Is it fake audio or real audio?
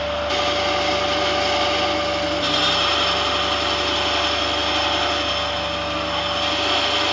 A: real